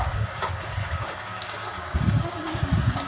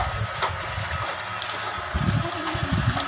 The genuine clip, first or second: second